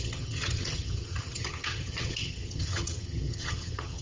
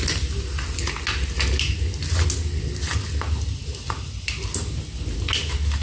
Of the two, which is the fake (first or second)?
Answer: first